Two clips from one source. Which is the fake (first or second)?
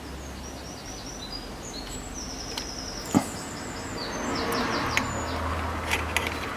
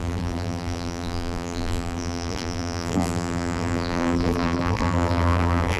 second